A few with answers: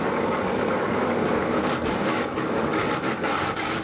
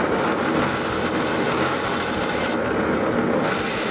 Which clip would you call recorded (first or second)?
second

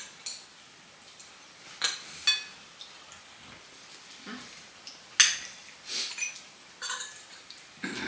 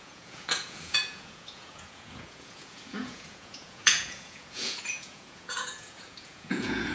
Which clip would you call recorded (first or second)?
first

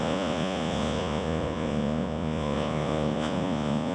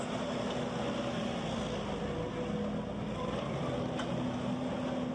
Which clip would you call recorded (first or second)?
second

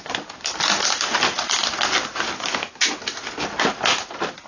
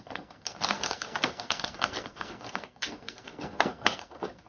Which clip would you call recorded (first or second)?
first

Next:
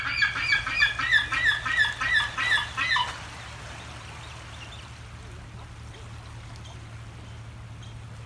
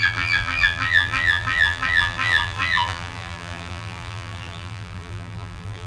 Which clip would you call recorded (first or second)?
first